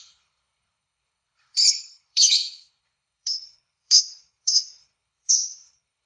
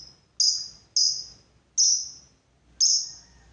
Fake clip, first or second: first